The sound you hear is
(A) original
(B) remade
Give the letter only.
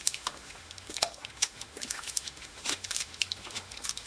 B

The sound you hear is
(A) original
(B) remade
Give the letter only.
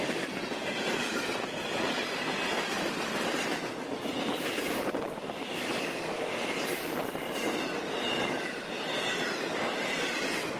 A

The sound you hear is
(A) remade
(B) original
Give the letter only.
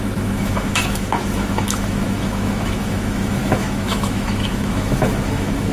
A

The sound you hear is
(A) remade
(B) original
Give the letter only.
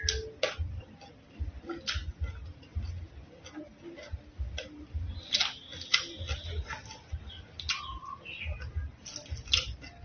B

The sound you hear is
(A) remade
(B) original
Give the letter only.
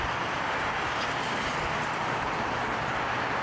B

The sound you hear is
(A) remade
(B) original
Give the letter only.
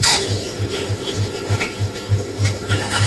A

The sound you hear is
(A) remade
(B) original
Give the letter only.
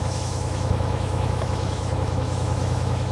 A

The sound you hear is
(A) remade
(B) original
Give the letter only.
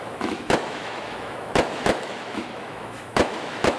A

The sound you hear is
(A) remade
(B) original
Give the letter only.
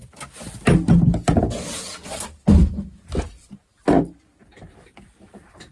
B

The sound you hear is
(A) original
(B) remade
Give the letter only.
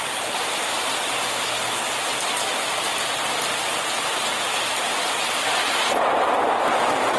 A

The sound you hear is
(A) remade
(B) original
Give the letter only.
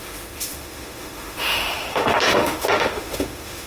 A